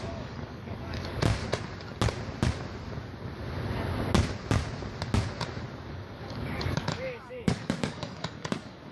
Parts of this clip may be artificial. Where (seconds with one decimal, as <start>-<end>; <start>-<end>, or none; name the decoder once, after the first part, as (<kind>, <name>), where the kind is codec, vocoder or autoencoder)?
0.0-1.4 (codec, DAC); 5.9-8.9